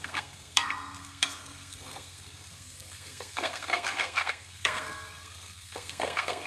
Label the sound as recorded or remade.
remade